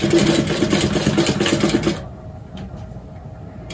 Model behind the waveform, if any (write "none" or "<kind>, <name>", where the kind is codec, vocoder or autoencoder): none